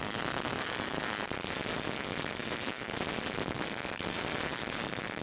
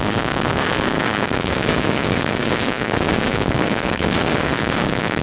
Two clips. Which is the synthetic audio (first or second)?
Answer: second